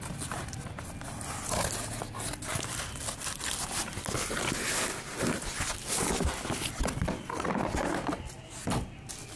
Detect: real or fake real